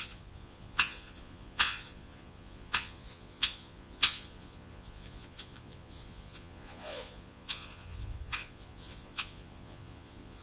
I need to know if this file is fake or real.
fake